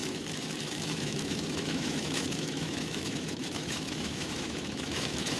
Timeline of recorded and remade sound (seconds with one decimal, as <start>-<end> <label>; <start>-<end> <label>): 0.0-5.4 remade